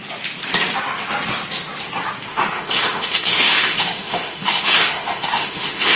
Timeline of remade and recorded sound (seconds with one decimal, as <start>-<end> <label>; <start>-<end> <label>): 0.0-2.3 recorded; 2.3-6.0 remade